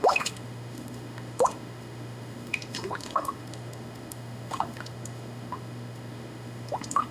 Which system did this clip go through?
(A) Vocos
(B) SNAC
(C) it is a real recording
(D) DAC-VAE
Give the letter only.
D